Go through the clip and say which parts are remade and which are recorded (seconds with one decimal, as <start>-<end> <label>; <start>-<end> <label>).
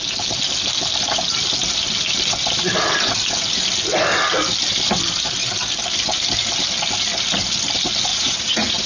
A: 0.0-8.1 recorded; 8.1-8.9 remade